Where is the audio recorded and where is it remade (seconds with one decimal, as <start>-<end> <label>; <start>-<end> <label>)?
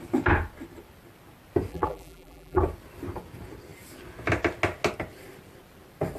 0.0-1.7 recorded; 1.7-2.6 remade; 2.6-6.2 recorded